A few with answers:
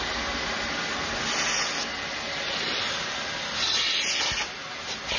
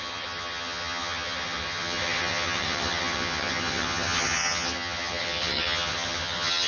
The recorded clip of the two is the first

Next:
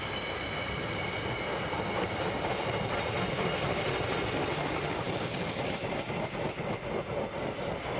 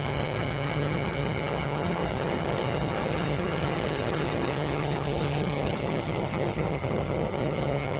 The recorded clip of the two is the first